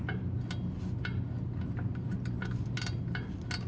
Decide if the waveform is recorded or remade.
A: recorded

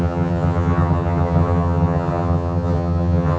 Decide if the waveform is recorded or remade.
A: remade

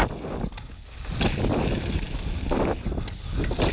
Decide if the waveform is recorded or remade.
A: recorded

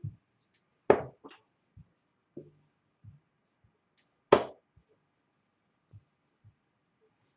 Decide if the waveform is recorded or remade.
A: recorded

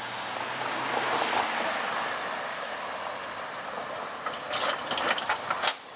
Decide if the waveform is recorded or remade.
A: recorded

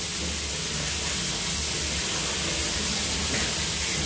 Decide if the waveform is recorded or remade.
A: recorded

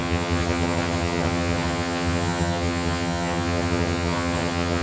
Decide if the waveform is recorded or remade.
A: remade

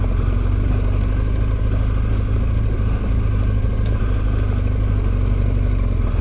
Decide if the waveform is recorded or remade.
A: recorded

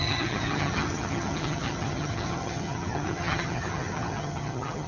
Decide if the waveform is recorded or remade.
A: remade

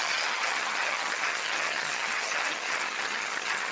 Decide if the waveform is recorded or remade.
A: remade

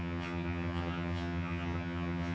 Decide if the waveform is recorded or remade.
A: remade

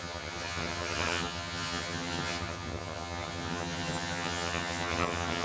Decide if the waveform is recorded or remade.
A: remade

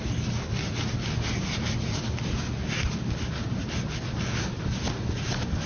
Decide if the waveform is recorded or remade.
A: recorded